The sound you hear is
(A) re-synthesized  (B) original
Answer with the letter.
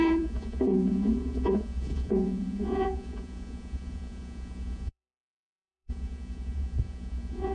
A